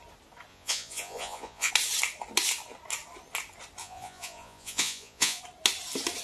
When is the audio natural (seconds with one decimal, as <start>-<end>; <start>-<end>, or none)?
0.0-0.5; 1.7-3.8; 5.4-6.2

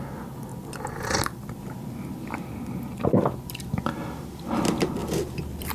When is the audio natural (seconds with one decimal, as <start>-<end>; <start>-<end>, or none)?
0.0-5.0